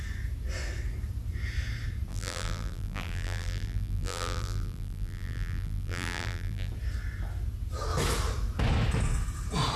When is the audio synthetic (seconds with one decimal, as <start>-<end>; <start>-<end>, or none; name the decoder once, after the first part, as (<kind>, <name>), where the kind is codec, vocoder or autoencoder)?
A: 2.1-6.7 (vocoder, BigVGAN v2)